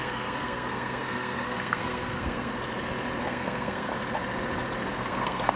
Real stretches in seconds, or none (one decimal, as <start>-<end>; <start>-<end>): 2.5-3.2; 3.9-4.9